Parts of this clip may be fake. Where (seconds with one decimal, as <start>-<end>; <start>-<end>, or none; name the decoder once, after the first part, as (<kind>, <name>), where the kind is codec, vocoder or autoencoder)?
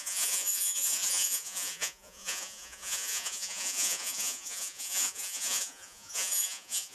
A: 0.0-6.9 (vocoder, Vocos)